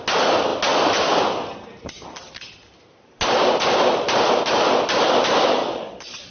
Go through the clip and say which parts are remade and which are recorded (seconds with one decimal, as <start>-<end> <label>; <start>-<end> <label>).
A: 0.0-5.6 recorded; 5.6-6.3 remade